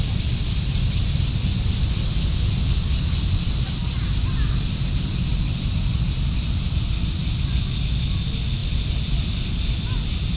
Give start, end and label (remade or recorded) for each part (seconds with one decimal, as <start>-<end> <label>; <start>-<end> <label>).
0.0-8.6 recorded; 8.6-9.3 remade; 9.3-10.4 recorded